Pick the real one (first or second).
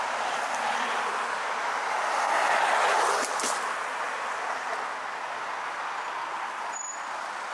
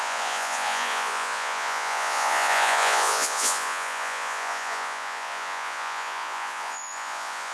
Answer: first